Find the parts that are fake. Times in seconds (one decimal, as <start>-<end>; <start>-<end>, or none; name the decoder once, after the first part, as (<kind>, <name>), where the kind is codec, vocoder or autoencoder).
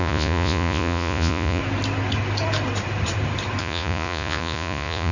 0.0-1.6 (vocoder, Vocos); 3.6-5.1